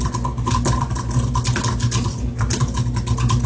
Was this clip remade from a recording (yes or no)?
no